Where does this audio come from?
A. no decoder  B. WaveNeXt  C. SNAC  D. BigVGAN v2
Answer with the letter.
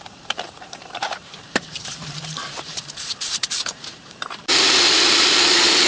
D